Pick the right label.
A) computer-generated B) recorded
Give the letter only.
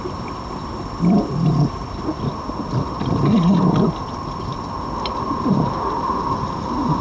B